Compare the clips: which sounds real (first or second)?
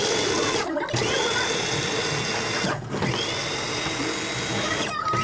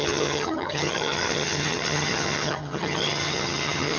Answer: first